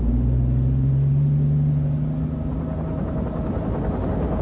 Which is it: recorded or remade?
recorded